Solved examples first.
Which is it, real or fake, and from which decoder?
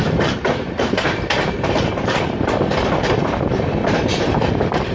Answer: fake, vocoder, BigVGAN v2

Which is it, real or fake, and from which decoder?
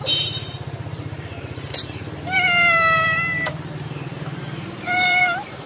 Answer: fake, vocoder, BigVGAN v2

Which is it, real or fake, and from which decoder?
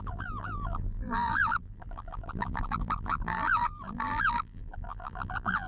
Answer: fake, vocoder, BigVGAN v2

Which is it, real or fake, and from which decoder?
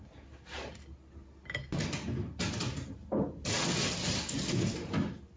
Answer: real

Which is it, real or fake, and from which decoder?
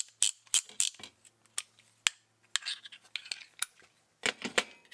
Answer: real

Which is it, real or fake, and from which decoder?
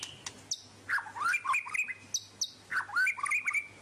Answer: real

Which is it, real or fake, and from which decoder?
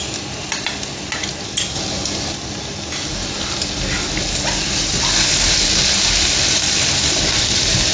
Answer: real